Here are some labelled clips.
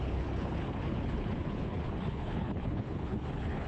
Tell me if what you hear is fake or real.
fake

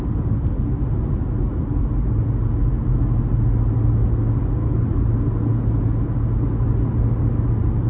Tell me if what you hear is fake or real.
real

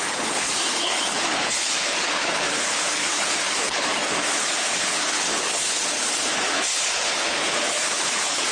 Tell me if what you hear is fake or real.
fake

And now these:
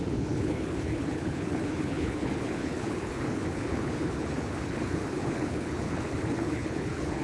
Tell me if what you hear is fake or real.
fake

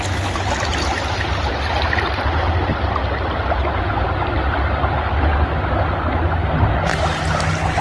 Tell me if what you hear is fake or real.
real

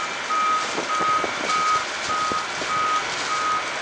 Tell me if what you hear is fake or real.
real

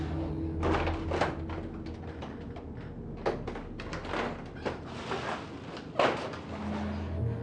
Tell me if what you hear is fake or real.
real